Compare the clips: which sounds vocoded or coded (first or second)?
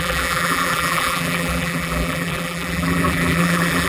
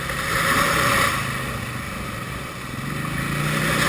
first